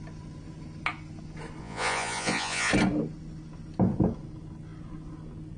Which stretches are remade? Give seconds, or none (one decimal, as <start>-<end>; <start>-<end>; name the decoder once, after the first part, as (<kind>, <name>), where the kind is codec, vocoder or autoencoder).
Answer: 1.6-2.7 (vocoder, Vocos)